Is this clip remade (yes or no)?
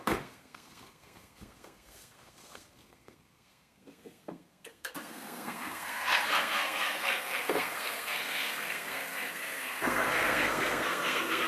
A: yes